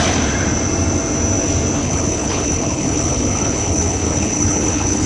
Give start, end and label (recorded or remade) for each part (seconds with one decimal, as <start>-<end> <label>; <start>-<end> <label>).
0.0-1.8 recorded; 1.8-5.1 remade

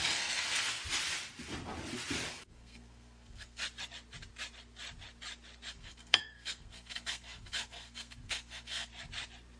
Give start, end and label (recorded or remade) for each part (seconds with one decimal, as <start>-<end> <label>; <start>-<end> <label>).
0.0-0.8 remade; 0.8-2.3 recorded; 2.3-3.6 remade; 3.6-5.7 recorded; 5.7-8.9 remade; 8.9-9.6 recorded